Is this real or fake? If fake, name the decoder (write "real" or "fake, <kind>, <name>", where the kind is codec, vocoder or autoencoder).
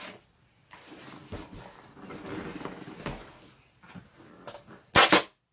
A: real